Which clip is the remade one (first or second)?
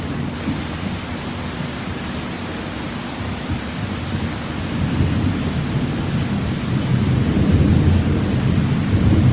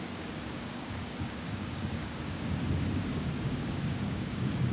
second